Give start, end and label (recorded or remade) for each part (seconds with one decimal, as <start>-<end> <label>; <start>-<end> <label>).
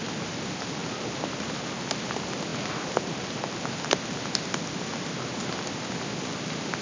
0.0-6.8 recorded